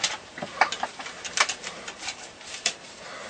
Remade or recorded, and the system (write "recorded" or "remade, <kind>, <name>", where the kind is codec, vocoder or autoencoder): remade, vocoder, BigVGAN v2